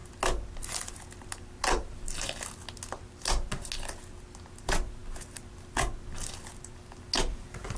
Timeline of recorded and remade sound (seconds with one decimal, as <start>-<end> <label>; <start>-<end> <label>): 0.0-7.8 recorded